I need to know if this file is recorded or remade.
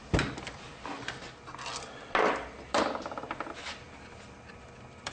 recorded